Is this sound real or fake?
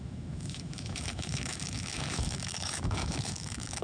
fake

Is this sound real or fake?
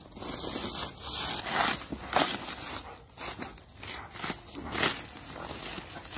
real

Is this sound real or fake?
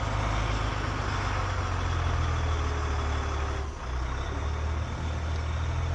real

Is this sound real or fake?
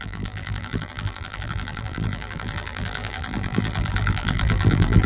fake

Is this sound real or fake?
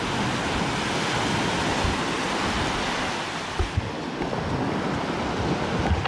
real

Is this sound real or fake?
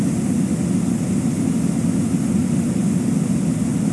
real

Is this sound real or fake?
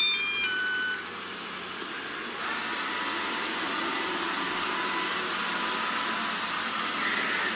real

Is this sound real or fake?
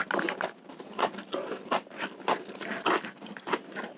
real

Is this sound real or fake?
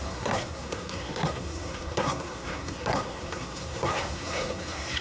fake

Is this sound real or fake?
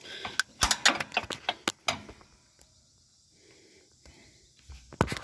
real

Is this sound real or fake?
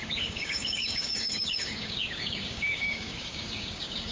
fake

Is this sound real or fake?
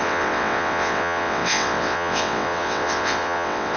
fake